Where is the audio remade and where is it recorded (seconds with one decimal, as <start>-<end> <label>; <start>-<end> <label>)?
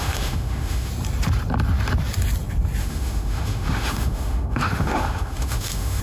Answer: 0.0-0.9 remade; 0.9-2.8 recorded; 2.8-6.0 remade